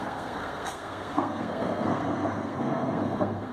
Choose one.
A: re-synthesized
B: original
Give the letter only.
A